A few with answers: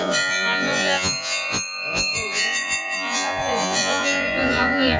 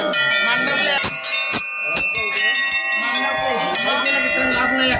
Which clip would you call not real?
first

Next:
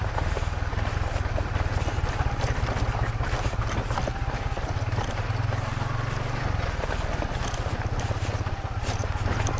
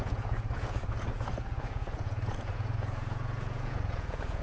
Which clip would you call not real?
second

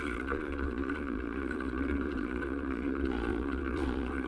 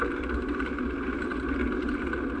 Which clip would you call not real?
first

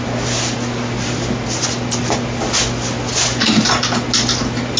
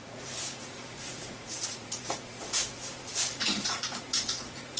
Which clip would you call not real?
second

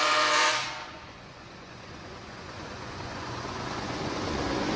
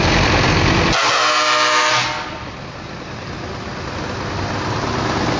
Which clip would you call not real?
first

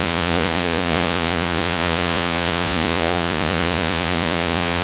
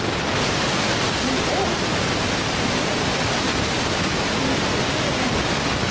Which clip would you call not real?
first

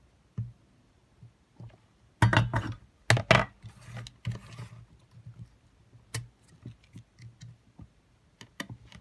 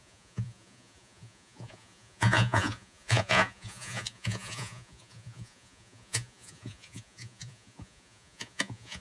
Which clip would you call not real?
second